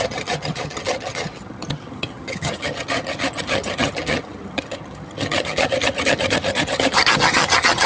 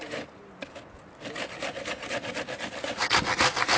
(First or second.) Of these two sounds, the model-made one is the first